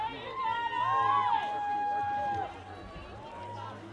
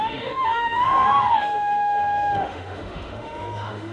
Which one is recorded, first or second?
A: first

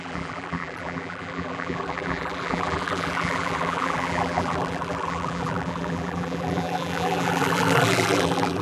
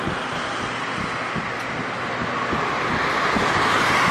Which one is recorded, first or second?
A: second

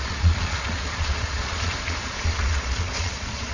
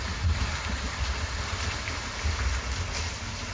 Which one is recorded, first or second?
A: second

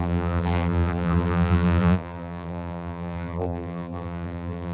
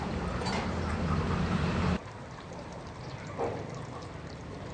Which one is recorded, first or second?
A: second